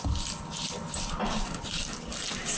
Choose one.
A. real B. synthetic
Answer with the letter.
A